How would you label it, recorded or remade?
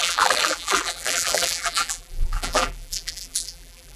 remade